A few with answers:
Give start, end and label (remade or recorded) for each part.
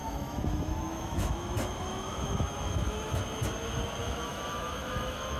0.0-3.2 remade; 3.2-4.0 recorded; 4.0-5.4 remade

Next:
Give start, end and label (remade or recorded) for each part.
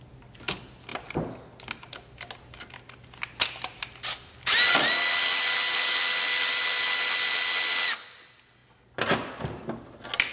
0.0-10.3 recorded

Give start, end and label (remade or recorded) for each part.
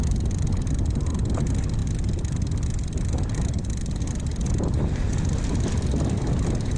0.0-6.8 recorded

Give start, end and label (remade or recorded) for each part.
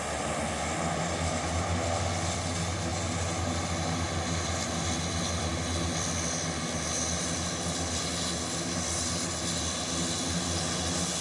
0.0-11.2 recorded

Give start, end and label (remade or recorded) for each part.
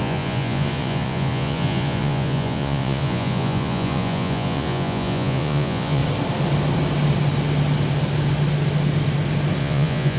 0.0-6.0 remade; 6.0-9.6 recorded; 9.6-10.2 remade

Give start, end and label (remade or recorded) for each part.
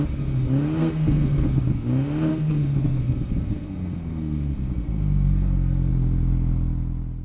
0.0-0.8 recorded; 0.8-1.6 remade; 1.6-2.3 recorded; 2.3-5.9 remade; 5.9-7.2 recorded